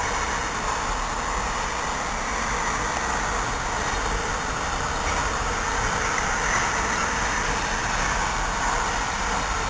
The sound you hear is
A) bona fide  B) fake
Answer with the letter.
A